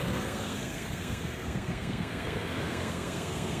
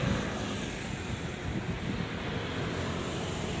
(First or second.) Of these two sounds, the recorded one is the second